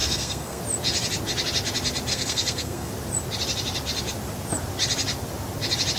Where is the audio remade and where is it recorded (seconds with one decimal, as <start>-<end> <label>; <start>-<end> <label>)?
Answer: 0.0-0.6 remade; 0.6-2.1 recorded; 2.1-2.9 remade; 2.9-6.0 recorded